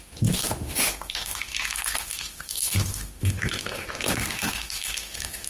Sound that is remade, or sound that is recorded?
remade